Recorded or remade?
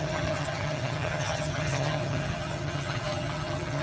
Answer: remade